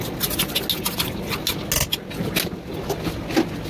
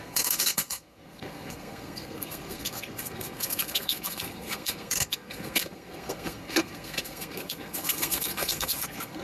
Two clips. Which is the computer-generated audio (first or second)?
second